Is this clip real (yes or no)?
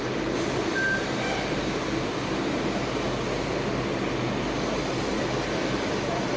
yes